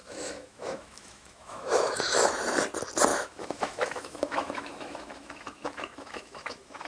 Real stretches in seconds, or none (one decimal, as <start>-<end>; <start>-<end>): 2.4-3.1